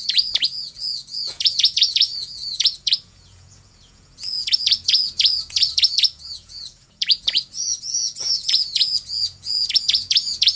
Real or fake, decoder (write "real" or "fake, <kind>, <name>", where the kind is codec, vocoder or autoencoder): fake, vocoder, Vocos